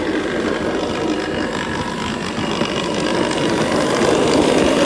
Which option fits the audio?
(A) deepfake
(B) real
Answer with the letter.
B